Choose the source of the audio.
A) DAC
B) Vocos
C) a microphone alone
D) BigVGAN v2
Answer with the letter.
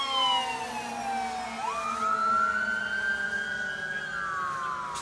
C